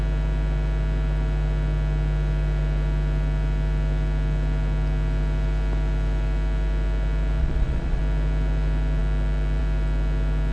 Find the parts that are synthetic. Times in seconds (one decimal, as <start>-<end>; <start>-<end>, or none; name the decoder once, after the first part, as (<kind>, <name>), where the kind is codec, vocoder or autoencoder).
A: 7.4-8.0 (vocoder, Vocos)